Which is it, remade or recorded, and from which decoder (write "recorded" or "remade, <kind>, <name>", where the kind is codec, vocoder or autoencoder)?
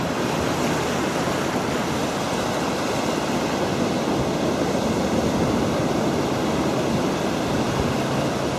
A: remade, vocoder, BigVGAN v2